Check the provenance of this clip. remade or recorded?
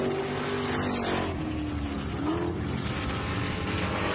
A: recorded